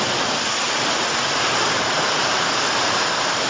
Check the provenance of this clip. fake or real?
real